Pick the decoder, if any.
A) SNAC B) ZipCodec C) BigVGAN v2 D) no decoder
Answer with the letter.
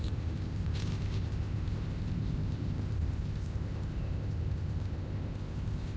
B